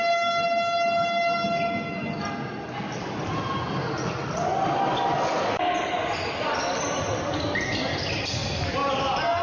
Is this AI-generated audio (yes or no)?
no